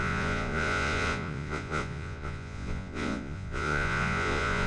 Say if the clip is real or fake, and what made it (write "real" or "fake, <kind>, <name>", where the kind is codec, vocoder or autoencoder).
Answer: fake, vocoder, Vocos